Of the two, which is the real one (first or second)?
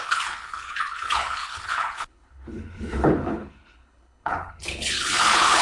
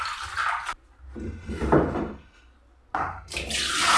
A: second